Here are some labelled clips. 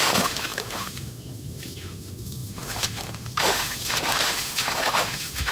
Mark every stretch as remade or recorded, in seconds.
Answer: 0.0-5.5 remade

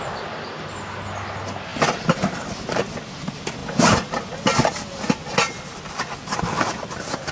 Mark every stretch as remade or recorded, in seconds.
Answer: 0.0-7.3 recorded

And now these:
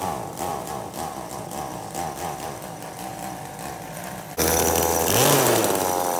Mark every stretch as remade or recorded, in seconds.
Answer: 0.0-6.2 recorded

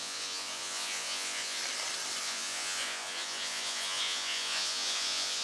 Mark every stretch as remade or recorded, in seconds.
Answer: 0.0-1.6 remade; 1.6-2.2 recorded; 2.2-5.4 remade

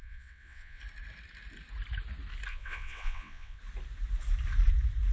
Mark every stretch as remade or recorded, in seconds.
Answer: 0.0-0.8 remade; 0.8-2.5 recorded; 2.5-3.6 remade; 3.6-5.1 recorded

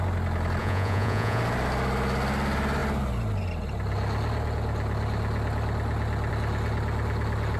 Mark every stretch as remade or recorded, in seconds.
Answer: 0.0-0.6 recorded; 0.6-1.4 remade; 1.4-7.6 recorded

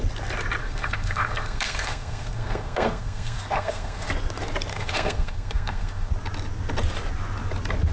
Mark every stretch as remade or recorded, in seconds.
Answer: 0.0-0.6 recorded; 0.6-4.1 remade; 4.1-4.7 recorded; 4.7-6.1 remade; 6.1-7.9 recorded

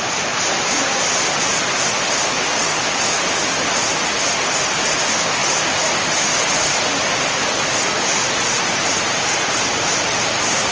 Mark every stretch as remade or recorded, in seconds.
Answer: 0.0-10.7 recorded